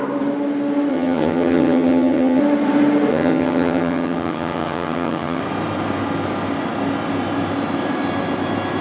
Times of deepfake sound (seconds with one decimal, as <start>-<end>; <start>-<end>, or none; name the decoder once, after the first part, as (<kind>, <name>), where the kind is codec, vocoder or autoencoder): 0.9-2.4 (vocoder, HiFi-GAN); 3.1-5.4